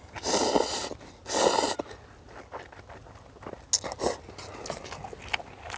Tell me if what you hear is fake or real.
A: real